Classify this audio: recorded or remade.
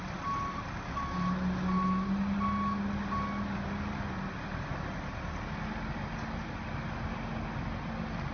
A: recorded